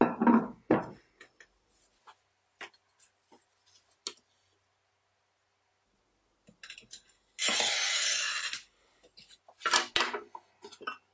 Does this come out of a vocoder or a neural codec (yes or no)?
no